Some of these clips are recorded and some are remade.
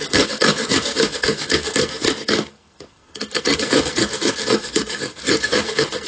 remade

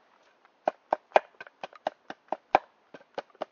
recorded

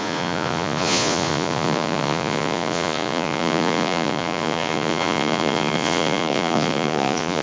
remade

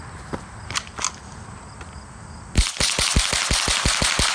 recorded